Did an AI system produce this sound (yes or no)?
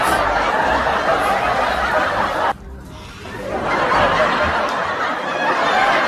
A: no